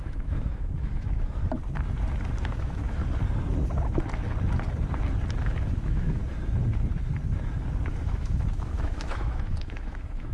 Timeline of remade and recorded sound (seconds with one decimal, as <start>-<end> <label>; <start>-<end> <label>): 0.0-1.4 remade; 1.4-2.4 recorded; 2.4-3.0 remade; 3.0-5.4 recorded; 5.4-6.2 remade; 6.2-8.0 recorded; 8.0-10.3 remade

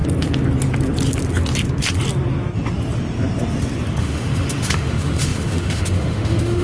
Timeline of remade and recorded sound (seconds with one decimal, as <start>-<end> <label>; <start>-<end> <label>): 0.0-4.0 recorded; 4.0-6.6 remade